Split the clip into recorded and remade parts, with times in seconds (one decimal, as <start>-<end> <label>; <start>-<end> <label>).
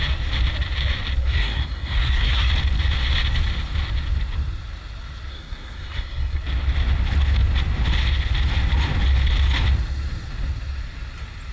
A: 0.0-1.2 recorded; 1.2-2.5 remade; 2.5-5.3 recorded; 5.3-6.4 remade; 6.4-11.5 recorded